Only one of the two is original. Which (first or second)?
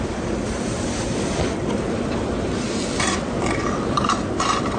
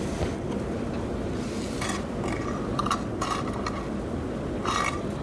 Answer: second